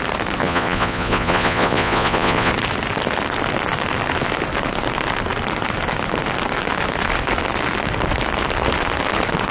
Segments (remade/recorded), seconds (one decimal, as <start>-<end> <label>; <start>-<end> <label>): 0.0-0.4 recorded; 0.4-2.5 remade; 2.5-9.5 recorded